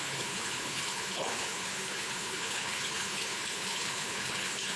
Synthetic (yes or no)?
yes